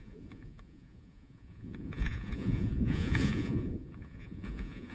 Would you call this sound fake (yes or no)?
yes